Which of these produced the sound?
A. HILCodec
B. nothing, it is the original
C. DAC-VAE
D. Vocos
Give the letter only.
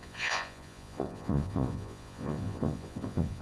D